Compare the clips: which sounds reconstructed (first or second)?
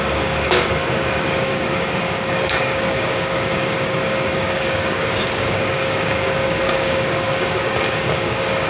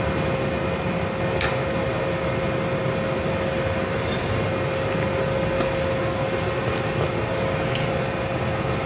first